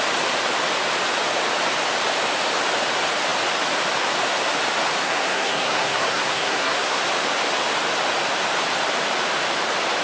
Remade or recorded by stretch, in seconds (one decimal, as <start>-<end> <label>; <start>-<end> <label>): 0.0-5.0 recorded; 5.0-7.0 remade; 7.0-10.0 recorded

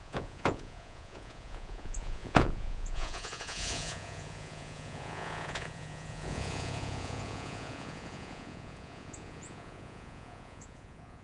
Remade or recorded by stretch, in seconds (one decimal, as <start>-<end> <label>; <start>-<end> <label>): 0.0-11.2 remade

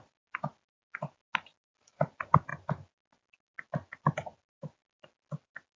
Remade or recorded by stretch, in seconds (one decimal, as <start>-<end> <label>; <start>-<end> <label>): 0.0-5.8 recorded

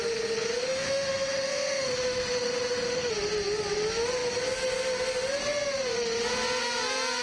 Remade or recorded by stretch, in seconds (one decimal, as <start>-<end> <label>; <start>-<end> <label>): 0.0-0.6 recorded; 0.6-3.1 remade; 3.1-7.2 recorded